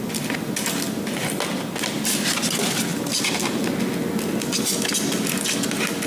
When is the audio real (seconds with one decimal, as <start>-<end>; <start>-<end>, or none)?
0.0-6.1